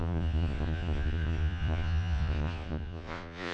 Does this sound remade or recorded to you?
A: remade